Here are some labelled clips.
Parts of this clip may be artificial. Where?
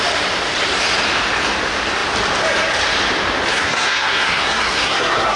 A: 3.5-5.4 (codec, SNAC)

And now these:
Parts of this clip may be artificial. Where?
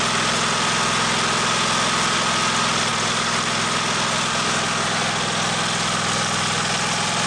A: 2.9-7.3 (vocoder, BigVGAN v2)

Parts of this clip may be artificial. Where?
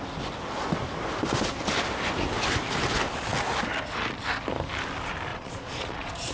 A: 5.3-6.3 (vocoder, Vocos)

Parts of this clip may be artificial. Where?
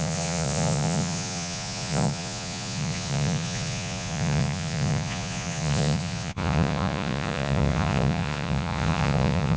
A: 0.0-9.6 (vocoder, Vocos)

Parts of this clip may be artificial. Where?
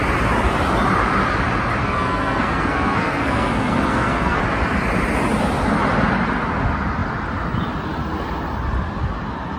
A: 1.8-4.4 (codec, SNAC)